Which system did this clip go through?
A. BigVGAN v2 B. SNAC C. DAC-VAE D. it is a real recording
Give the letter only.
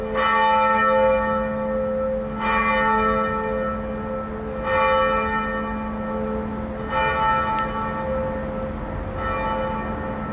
D